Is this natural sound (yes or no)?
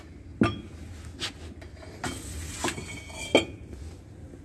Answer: yes